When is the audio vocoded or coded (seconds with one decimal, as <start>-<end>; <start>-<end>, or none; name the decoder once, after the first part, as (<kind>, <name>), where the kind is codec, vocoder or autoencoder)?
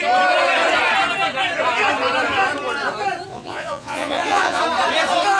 3.3-4.6 (vocoder, Vocos)